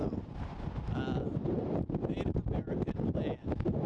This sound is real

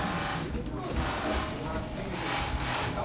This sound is real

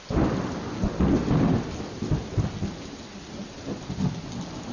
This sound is real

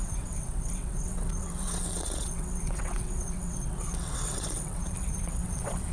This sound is fake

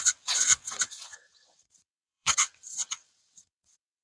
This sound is fake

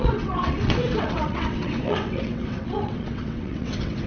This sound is fake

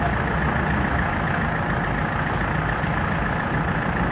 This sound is real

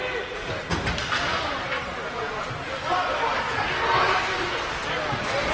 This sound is real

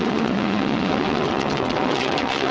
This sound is fake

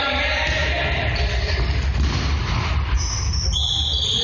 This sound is real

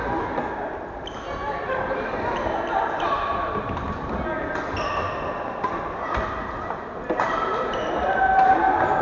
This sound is real